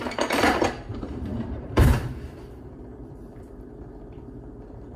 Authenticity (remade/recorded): remade